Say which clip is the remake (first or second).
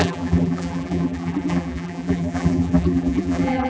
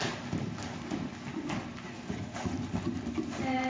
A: first